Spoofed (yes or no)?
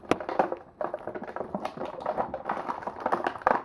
no